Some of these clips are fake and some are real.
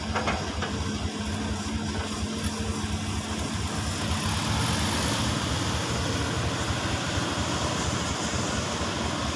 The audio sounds real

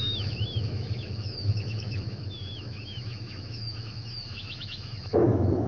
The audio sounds fake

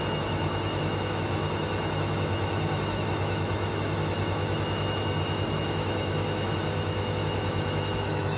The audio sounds fake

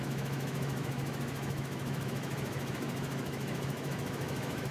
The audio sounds fake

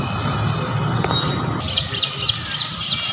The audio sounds real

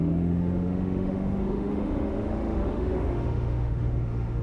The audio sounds fake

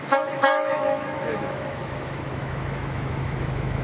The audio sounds fake